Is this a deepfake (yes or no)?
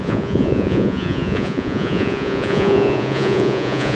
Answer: yes